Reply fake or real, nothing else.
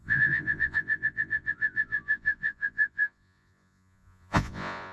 fake